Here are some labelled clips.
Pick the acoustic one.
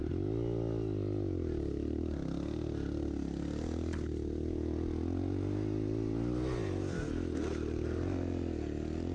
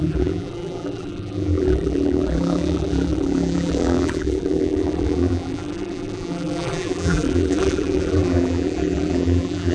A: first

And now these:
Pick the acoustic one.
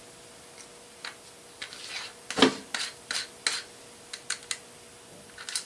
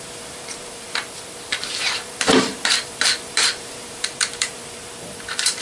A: first